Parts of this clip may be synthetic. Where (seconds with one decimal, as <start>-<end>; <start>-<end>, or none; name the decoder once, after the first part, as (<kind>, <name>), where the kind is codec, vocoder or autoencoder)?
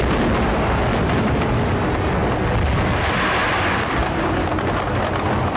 none